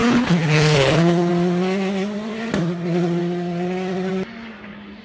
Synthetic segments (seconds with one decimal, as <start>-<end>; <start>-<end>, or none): 0.0-1.3